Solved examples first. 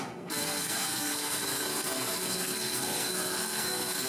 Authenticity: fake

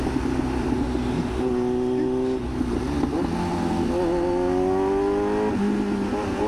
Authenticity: real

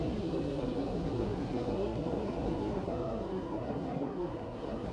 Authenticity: fake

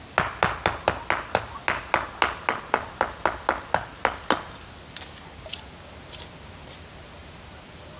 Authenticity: real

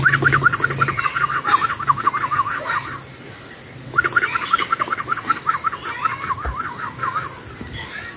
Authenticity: real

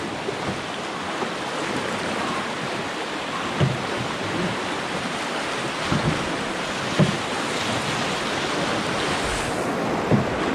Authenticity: real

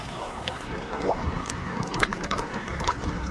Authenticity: fake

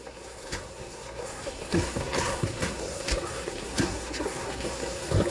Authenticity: fake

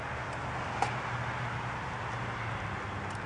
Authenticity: real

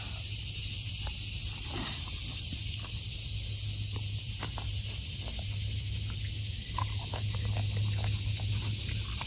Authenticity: real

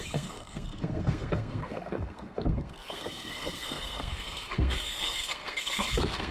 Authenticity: fake